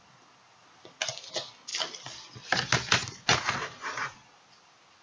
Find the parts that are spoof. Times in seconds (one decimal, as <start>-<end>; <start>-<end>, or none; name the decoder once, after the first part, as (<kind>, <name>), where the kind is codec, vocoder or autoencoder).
none